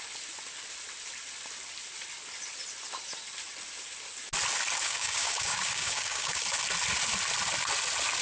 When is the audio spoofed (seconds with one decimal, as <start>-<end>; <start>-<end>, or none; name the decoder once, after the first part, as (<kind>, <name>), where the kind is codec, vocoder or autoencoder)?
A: 4.8-6.4 (codec, DAC)